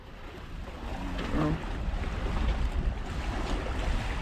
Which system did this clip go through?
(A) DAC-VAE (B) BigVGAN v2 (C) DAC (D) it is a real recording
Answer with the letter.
D